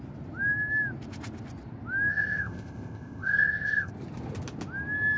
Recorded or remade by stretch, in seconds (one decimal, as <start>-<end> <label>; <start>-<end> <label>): 0.0-2.1 recorded; 2.1-3.9 remade; 3.9-5.2 recorded